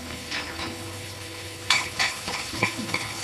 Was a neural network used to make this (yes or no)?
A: yes